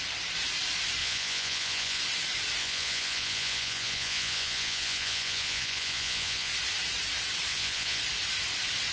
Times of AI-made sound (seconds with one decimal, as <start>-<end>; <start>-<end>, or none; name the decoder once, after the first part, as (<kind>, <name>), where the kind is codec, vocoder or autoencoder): 1.0-2.0 (vocoder, Vocos); 2.6-6.5; 7.5-8.0